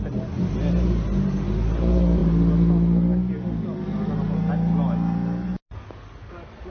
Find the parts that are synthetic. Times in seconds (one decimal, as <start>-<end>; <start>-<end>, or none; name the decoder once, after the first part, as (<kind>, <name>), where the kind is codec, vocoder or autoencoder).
none